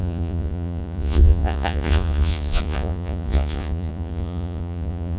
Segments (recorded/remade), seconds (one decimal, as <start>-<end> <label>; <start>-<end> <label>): 0.0-5.2 remade